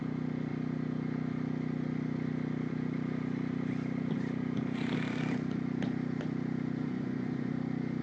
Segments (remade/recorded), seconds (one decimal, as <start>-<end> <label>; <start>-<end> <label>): 0.0-6.8 recorded; 6.8-7.5 remade; 7.5-8.0 recorded

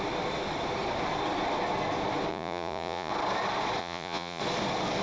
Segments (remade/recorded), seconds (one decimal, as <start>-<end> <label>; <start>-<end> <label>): 0.0-2.3 recorded; 2.3-3.1 remade; 3.1-3.8 recorded; 3.8-4.4 remade; 4.4-5.0 recorded

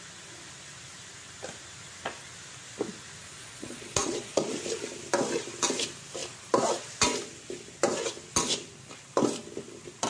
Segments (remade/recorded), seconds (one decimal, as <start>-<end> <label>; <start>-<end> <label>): 0.0-3.2 recorded; 3.2-4.5 remade; 4.5-10.1 recorded